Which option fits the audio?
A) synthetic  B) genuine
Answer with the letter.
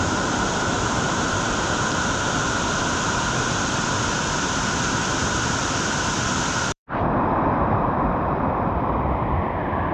A